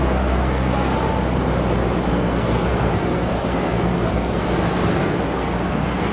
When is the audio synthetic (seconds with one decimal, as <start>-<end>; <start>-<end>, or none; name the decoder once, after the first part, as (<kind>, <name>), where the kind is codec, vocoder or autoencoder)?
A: 0.0-0.9 (codec, SNAC); 2.1-6.1